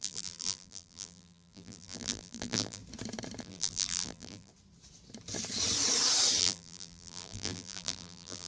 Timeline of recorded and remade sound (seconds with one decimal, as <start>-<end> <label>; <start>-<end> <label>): 0.0-2.8 remade; 2.8-3.4 recorded; 3.4-4.5 remade; 4.5-6.4 recorded; 6.4-8.5 remade